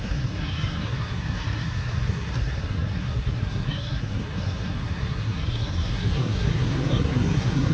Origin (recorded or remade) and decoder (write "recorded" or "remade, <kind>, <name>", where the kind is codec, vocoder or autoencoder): remade, codec, SNAC